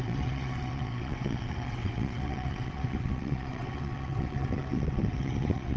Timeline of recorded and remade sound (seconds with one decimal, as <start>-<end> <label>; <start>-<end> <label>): 0.0-5.8 remade